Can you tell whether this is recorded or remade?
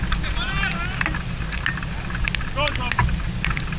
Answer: recorded